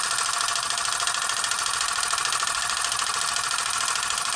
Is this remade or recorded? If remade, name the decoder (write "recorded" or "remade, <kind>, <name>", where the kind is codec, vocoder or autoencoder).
recorded